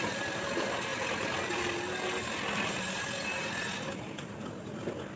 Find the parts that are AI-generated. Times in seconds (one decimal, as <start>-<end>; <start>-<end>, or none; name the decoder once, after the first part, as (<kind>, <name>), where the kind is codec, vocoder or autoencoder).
none